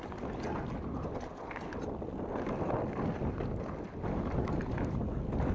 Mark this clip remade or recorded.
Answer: recorded